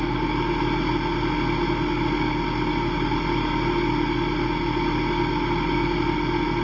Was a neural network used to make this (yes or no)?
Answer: no